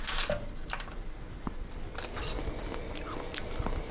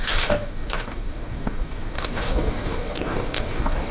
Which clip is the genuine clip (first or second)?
first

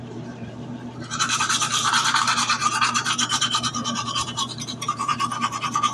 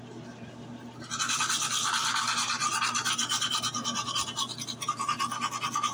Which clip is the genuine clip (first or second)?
second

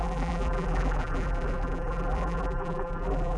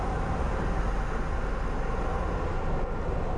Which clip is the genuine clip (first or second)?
second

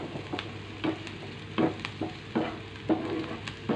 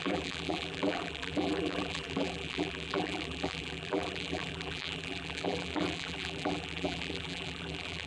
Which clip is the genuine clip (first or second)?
first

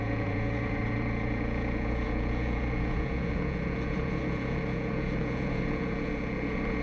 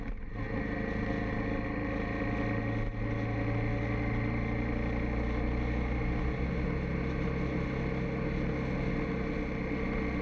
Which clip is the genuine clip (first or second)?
second